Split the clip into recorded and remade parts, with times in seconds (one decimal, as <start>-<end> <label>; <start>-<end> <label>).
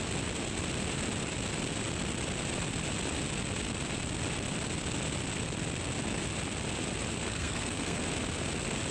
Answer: 0.0-7.3 recorded; 7.3-8.0 remade; 8.0-8.9 recorded